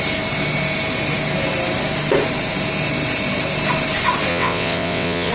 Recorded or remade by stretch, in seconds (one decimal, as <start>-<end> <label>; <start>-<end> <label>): 0.0-4.3 recorded; 4.3-5.3 remade